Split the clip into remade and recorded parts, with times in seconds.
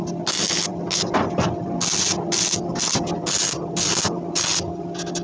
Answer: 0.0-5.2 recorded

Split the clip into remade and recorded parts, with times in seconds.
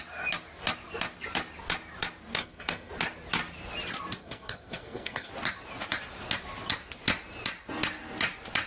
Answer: 0.0-2.4 recorded; 2.4-2.9 remade; 2.9-4.2 recorded; 4.2-5.3 remade; 5.3-8.7 recorded